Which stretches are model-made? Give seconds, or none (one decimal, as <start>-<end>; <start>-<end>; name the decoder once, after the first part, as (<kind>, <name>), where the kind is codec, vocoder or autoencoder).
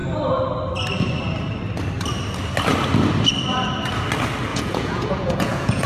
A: 4.5-5.9 (vocoder, Vocos)